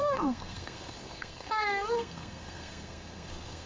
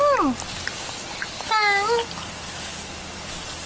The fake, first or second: first